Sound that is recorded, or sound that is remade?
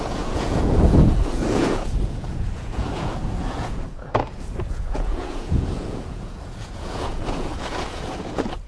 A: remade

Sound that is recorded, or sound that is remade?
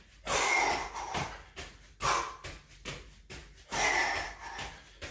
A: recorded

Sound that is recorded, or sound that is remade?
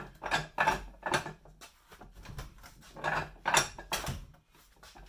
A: recorded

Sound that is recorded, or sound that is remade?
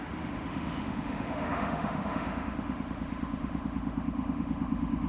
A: remade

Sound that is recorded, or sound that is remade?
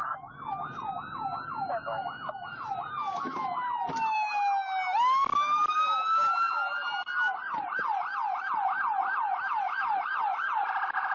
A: recorded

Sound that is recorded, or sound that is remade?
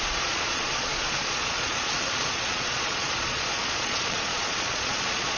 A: remade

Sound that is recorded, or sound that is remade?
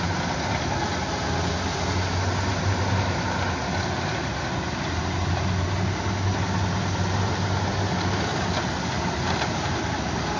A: recorded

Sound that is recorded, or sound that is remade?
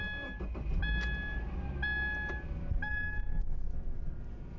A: recorded